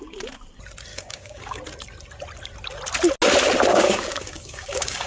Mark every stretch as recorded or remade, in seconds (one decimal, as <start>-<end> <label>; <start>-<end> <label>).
0.0-0.9 recorded; 0.9-1.6 remade; 1.6-3.7 recorded; 3.7-5.1 remade